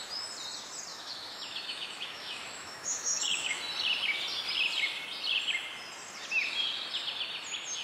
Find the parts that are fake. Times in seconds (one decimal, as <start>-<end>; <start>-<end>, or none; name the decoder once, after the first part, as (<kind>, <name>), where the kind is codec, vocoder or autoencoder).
0.9-3.6 (autoencoder, DAC-VAE)